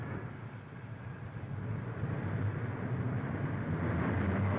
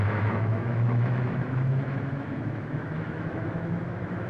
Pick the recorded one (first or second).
first